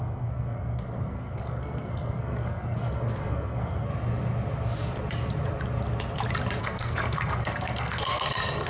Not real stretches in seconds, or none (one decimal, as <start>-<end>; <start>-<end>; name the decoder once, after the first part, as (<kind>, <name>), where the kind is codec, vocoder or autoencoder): 0.0-3.9 (codec, SNAC); 6.6-8.7